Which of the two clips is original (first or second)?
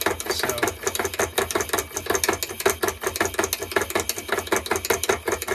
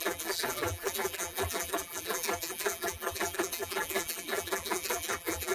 first